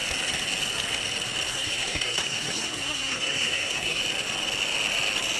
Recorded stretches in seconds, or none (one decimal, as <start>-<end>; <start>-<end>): 0.0-1.5; 4.0-5.4